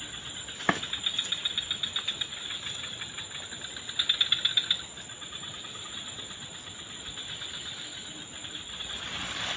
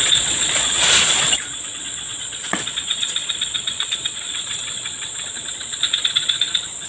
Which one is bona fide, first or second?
first